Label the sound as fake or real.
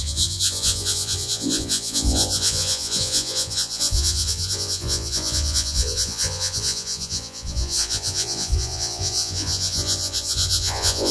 fake